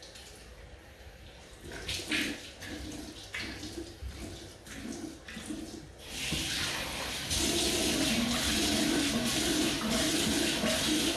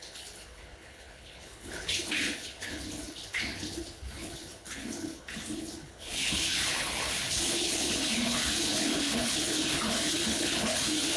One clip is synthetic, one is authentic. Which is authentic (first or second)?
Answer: first